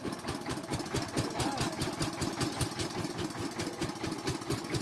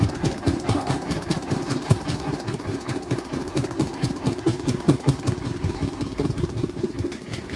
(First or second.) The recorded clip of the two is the first